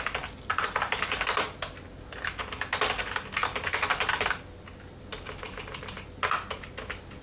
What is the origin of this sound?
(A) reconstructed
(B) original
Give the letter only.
B